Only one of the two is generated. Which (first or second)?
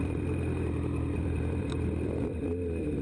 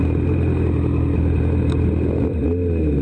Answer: first